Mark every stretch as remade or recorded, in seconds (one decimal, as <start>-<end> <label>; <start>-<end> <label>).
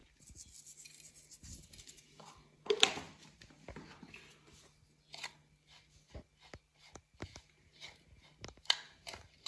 0.0-9.5 recorded